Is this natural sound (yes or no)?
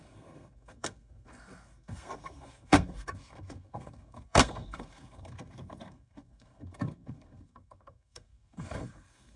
no